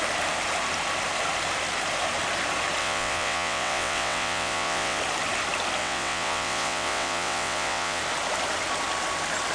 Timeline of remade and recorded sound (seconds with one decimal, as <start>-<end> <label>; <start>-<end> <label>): 0.0-2.8 recorded; 2.8-5.0 remade; 5.0-5.8 recorded; 5.8-8.0 remade; 8.0-9.5 recorded